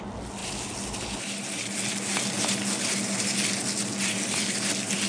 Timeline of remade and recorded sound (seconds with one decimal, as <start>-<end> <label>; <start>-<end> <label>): 0.0-5.1 recorded